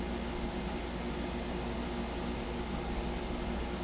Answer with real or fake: real